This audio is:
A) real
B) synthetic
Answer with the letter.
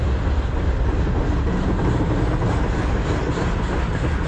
A